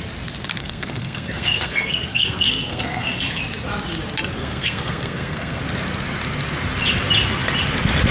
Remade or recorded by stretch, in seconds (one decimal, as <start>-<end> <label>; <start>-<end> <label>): 0.0-0.6 recorded; 0.6-3.4 remade; 3.4-4.4 recorded; 4.4-5.6 remade; 5.6-8.1 recorded